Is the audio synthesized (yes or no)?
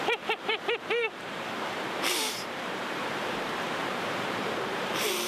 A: yes